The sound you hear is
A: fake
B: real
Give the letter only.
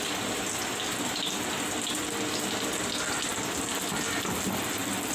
B